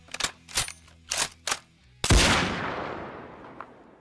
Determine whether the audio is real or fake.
real